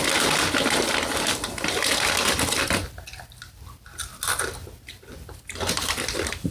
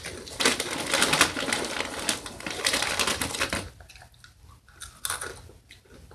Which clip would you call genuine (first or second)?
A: second